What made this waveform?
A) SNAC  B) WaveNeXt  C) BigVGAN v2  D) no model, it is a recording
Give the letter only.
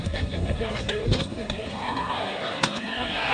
A